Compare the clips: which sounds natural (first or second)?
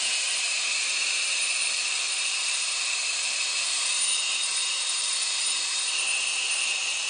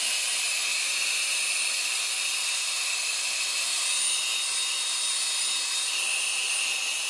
second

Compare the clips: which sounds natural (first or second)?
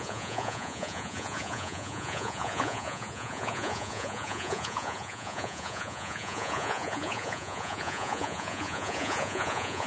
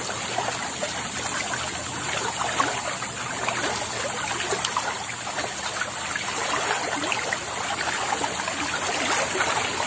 second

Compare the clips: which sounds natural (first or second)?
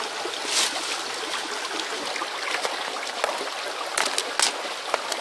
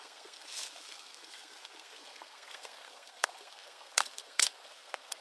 first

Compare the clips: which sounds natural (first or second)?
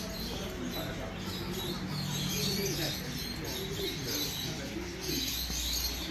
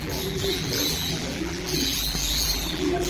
first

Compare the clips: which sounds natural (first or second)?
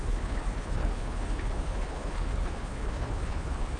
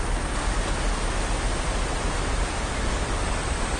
second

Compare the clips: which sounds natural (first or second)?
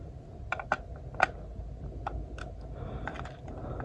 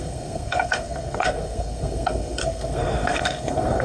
first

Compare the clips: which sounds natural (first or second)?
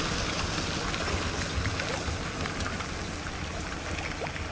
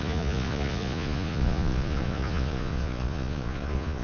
first